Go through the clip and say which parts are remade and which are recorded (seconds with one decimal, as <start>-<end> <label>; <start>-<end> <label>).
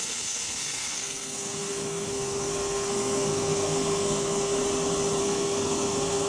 0.0-4.6 remade; 4.6-5.2 recorded; 5.2-6.3 remade